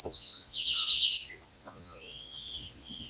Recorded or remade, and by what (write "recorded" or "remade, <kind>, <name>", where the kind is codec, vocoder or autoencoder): remade, vocoder, Vocos